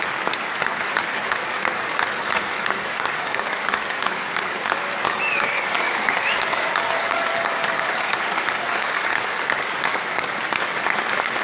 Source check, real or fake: fake